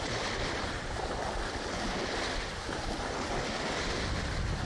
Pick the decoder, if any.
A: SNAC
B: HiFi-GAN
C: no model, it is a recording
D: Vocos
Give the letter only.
C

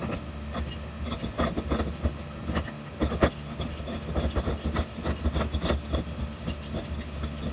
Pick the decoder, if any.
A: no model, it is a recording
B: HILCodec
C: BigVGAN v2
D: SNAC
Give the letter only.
A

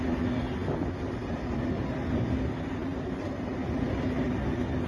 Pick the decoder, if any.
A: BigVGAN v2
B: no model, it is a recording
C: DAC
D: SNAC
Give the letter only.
B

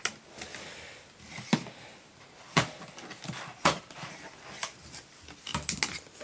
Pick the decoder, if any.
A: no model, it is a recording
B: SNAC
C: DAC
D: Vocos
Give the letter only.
A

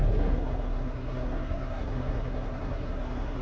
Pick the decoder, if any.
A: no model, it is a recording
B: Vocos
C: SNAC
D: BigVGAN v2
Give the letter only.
C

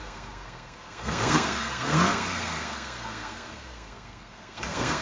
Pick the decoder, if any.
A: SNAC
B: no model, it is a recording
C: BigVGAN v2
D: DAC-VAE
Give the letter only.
A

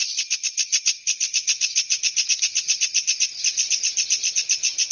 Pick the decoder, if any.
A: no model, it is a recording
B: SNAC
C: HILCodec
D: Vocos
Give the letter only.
A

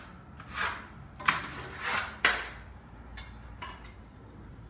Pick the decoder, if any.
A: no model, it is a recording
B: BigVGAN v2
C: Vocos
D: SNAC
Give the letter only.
A